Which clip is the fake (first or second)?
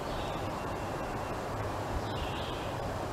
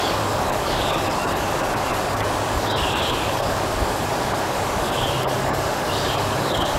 second